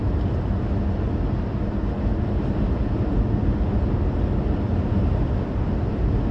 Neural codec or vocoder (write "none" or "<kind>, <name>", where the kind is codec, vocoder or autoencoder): none